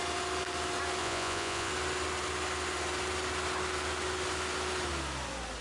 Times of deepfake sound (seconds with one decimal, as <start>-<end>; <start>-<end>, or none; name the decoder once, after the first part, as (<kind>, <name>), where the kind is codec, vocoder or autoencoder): 1.0-1.7 (vocoder, Vocos)